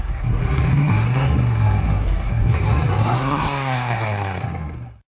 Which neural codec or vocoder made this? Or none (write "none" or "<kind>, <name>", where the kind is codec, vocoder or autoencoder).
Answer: codec, SNAC